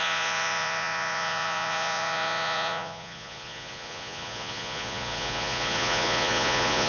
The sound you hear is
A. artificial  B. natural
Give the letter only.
A